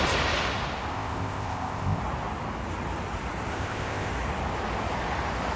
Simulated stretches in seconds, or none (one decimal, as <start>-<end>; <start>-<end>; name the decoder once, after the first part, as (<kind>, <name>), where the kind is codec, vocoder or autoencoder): 0.9-2.0 (codec, ZipCodec); 3.5-4.1

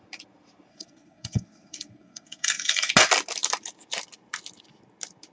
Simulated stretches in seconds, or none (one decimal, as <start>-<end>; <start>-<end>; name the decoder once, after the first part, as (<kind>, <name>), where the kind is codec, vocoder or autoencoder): 0.7-2.9 (codec, SNAC)

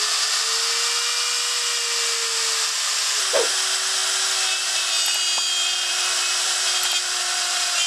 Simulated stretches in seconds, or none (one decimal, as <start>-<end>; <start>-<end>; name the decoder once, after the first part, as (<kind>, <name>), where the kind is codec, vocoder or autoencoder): none